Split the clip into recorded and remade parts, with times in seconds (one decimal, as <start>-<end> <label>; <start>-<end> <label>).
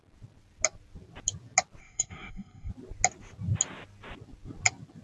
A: 0.0-1.8 recorded; 1.8-2.7 remade; 2.7-5.0 recorded